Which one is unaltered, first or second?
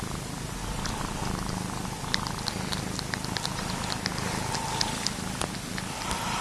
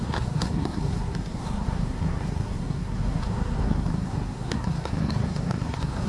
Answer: first